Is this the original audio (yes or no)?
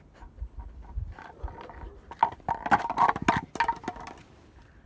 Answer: yes